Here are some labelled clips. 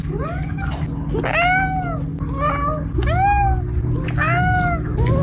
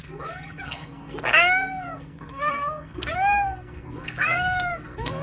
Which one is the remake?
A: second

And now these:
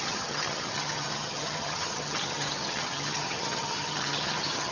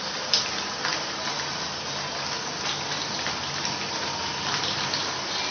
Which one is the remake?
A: first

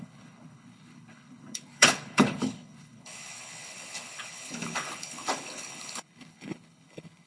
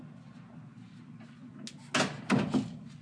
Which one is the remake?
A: first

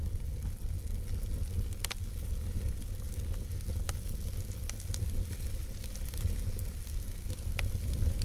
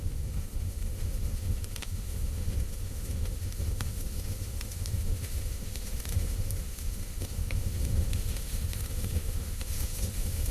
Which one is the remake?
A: second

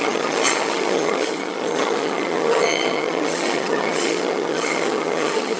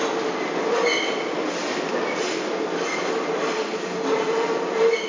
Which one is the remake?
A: first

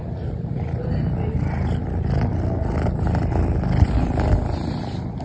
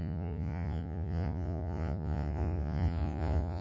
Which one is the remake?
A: second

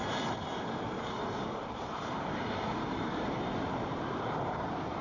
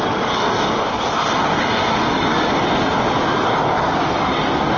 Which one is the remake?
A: first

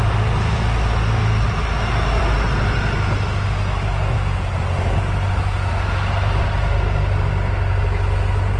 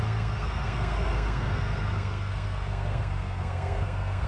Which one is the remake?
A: second